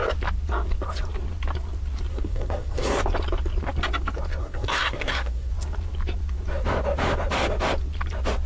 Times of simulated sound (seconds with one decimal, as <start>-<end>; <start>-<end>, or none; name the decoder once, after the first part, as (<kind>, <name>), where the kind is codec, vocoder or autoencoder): 2.1-3.0 (codec, SNAC); 4.4-5.5

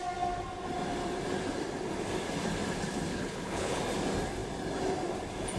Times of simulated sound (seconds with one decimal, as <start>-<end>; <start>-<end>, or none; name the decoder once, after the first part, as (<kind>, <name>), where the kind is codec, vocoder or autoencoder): 3.1-3.8 (codec, HILCodec)

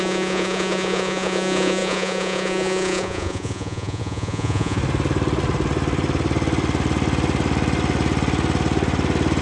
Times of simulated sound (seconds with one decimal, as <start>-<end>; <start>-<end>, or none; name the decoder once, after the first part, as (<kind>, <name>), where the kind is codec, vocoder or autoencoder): 0.0-4.8 (vocoder, Vocos)

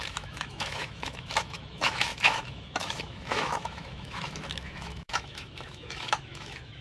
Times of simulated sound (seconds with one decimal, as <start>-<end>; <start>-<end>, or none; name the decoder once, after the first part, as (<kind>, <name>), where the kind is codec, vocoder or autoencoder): 0.0-6.8 (autoencoder, DAC-VAE)

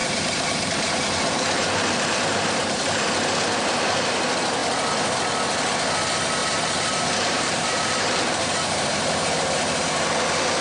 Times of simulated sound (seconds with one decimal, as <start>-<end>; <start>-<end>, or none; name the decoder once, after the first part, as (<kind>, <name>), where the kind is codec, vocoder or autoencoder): 0.0-3.1 (vocoder, BigVGAN v2); 6.4-10.1

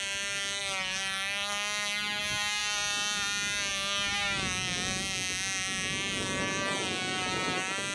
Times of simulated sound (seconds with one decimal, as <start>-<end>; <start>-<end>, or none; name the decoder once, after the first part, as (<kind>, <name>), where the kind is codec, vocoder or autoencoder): none

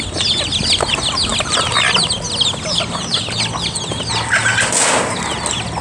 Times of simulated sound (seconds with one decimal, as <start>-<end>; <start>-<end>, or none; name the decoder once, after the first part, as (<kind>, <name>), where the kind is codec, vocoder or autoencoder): none